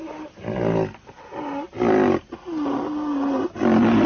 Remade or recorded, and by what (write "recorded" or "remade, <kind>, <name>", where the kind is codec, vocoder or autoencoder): recorded